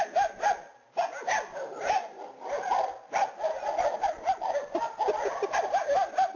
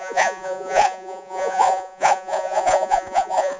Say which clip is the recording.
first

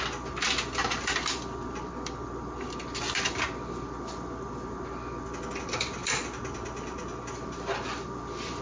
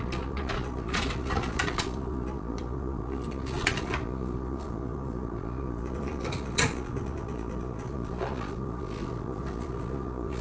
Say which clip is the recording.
first